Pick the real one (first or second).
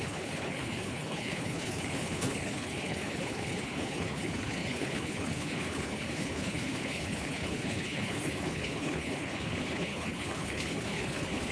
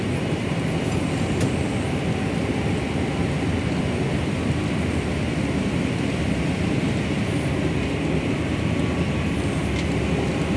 second